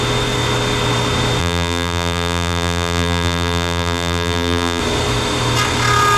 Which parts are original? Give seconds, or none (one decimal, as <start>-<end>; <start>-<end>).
0.0-1.4; 4.8-6.2